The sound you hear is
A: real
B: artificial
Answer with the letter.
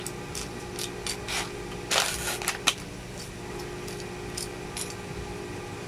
A